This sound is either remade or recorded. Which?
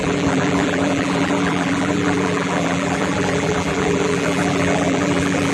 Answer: remade